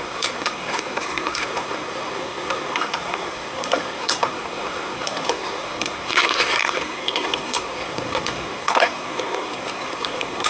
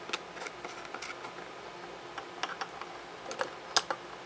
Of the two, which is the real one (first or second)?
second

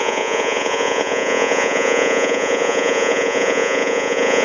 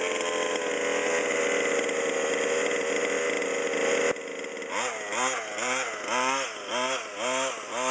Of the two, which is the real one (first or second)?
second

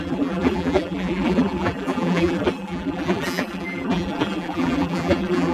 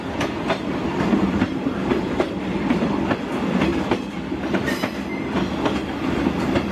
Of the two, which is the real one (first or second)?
second